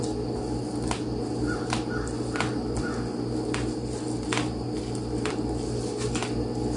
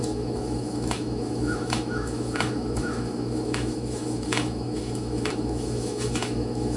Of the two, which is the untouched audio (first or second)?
first